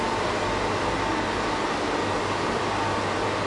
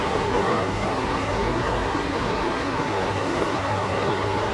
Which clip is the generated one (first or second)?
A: second